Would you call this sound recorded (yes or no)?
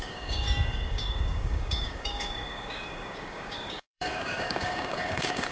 no